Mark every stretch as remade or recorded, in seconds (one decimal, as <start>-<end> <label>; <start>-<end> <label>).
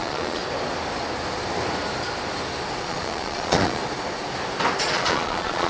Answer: 0.0-0.4 remade; 0.4-2.8 recorded; 2.8-3.8 remade; 3.8-4.8 recorded; 4.8-5.7 remade